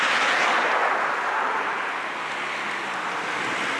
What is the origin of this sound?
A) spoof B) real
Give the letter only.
B